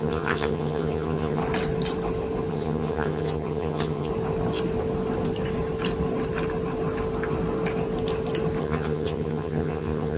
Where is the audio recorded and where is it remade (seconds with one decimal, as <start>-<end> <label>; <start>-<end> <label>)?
0.0-1.4 remade; 1.4-2.5 recorded; 2.5-4.1 remade; 4.1-8.6 recorded; 8.6-10.2 remade